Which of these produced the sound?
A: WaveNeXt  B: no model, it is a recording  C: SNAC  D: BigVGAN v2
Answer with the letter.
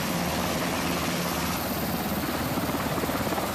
B